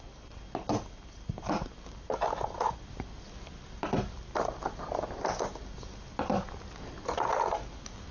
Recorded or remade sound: recorded